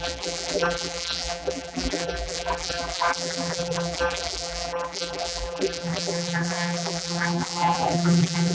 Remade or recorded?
remade